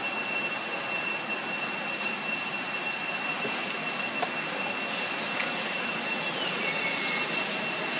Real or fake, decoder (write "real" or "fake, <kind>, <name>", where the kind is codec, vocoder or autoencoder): real